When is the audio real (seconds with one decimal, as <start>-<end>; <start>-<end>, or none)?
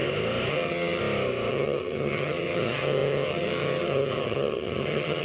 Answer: 0.0-0.5; 1.0-1.5